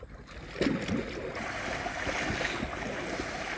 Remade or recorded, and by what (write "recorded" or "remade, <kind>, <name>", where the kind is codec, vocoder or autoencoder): recorded